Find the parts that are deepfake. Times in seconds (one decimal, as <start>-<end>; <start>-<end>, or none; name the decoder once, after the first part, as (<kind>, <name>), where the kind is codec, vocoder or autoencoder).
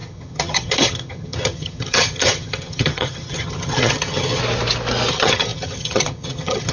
0.0-4.4 (vocoder, HiFi-GAN); 5.1-6.7